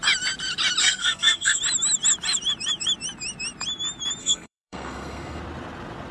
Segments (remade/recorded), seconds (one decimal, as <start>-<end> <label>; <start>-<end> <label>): 0.0-0.8 recorded; 0.8-1.6 remade; 1.6-4.2 recorded; 4.2-5.4 remade; 5.4-6.1 recorded